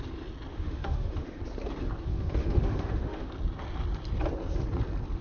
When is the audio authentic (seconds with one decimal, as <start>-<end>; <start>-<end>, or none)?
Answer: 0.0-0.5; 1.4-2.1; 3.3-5.2